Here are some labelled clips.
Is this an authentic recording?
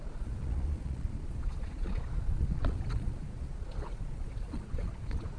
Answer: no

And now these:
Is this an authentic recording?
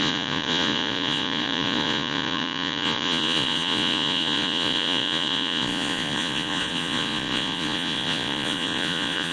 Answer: no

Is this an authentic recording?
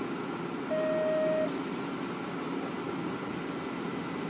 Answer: yes